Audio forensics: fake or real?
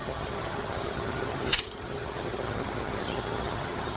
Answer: fake